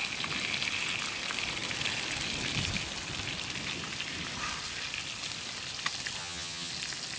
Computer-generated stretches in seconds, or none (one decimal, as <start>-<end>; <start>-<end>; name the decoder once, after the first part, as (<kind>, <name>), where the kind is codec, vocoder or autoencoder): 6.2-6.7 (vocoder, HiFi-GAN)